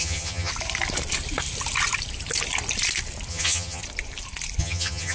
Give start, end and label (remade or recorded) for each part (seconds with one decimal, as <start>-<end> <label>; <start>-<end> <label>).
0.0-0.5 remade; 0.5-3.3 recorded; 3.3-3.8 remade; 3.8-4.6 recorded; 4.6-5.1 remade